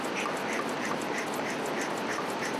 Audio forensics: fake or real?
real